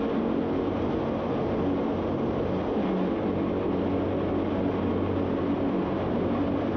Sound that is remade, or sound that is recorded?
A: recorded